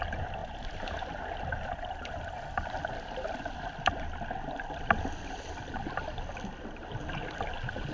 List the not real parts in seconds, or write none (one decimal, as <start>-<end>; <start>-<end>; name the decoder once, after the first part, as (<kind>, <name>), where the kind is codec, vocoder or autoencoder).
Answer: none